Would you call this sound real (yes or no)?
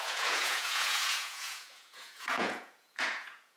no